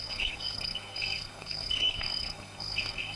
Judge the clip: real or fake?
fake